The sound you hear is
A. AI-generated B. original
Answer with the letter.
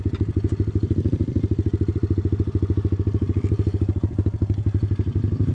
B